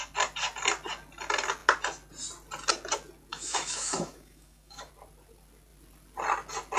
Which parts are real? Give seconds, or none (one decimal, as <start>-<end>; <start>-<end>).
0.0-3.3; 4.9-6.8